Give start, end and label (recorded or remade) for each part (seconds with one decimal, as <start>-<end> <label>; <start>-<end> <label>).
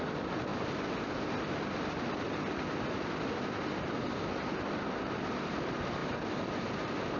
0.0-0.5 remade; 0.5-4.8 recorded; 4.8-7.2 remade